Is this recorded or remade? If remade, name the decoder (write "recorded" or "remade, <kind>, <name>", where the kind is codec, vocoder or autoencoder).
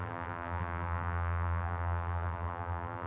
remade, vocoder, BigVGAN v2